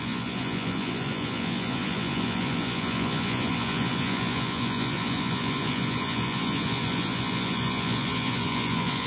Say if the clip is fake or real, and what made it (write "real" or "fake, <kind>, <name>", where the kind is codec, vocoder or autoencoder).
fake, vocoder, Vocos